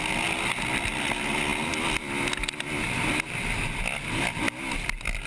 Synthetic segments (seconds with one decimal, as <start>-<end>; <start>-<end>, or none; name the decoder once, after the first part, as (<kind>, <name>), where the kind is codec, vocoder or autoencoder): none